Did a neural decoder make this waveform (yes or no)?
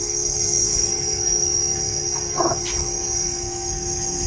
yes